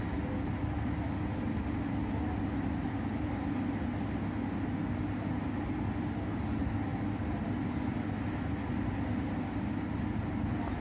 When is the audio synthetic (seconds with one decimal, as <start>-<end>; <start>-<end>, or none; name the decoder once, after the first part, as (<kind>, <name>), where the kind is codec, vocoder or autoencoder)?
none